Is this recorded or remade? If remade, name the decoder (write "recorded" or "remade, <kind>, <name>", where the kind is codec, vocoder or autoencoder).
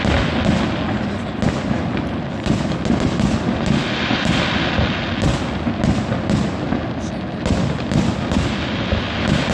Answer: recorded